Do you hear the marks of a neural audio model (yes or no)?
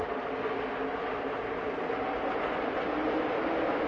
no